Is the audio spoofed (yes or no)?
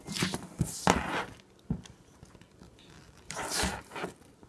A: yes